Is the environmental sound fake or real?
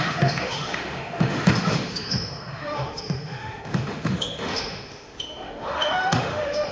fake